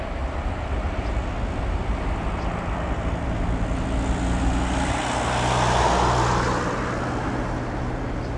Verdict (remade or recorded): recorded